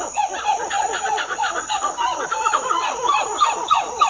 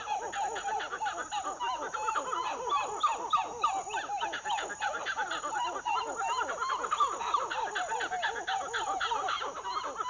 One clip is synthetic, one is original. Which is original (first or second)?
second